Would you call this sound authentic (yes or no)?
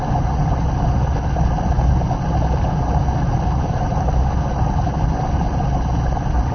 yes